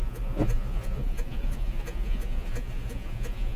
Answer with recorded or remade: remade